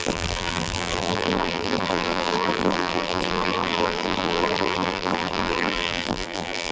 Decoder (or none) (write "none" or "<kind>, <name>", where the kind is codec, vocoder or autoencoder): vocoder, BigVGAN v2